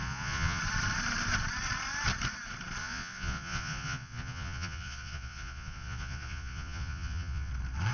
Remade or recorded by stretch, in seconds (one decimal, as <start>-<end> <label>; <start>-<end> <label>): 0.0-0.6 remade; 0.6-2.8 recorded; 2.8-7.5 remade; 7.5-7.9 recorded